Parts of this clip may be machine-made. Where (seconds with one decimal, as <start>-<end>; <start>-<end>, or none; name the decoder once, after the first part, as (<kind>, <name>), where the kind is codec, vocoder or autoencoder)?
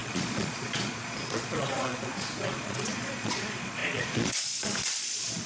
0.0-5.5 (vocoder, Vocos)